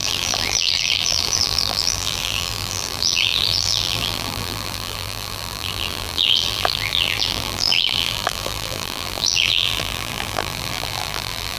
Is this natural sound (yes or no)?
no